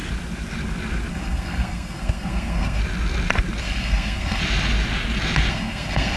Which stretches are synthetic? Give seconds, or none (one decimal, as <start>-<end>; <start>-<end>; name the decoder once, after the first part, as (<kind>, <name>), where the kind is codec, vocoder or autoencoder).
1.1-2.8 (codec, SNAC); 3.6-4.4; 5.5-6.2